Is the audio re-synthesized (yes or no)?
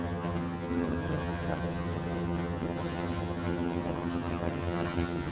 yes